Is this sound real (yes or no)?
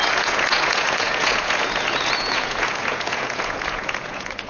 no